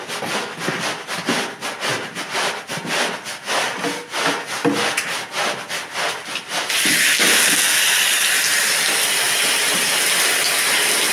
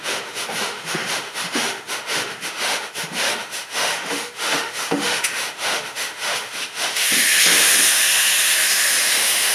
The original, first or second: first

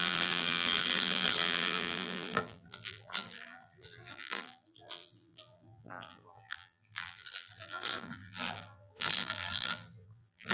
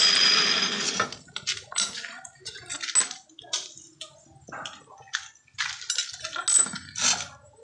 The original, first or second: second